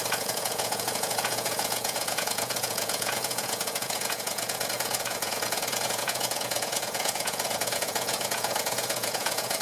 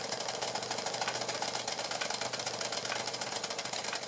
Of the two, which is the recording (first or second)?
second